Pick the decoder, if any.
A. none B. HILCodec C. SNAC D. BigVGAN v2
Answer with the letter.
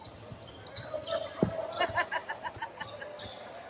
A